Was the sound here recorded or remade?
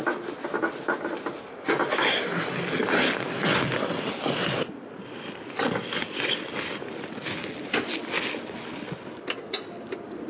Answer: recorded